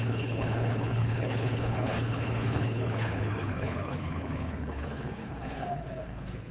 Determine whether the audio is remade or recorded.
remade